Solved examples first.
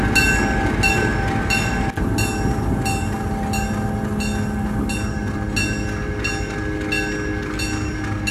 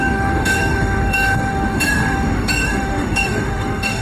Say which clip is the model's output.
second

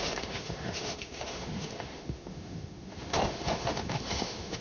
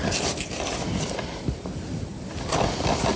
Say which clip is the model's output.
first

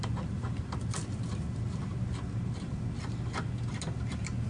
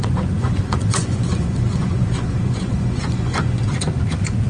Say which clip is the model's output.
second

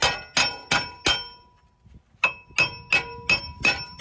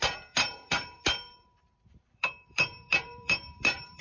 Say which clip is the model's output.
second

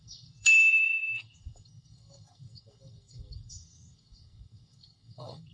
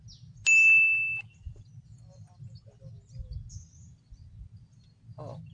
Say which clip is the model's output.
first